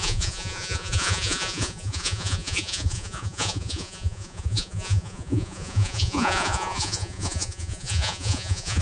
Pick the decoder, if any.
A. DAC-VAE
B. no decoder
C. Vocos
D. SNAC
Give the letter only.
C